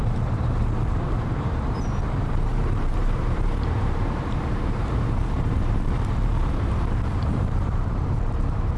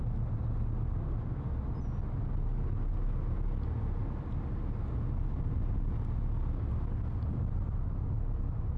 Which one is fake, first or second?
first